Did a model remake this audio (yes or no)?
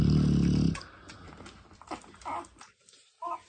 no